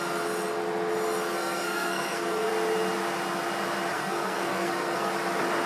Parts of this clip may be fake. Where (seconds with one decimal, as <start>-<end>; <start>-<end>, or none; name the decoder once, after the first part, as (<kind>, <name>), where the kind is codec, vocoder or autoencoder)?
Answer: 1.3-2.5 (codec, SNAC); 3.9-5.1